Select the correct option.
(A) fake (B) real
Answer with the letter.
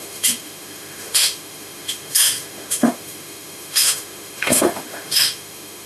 A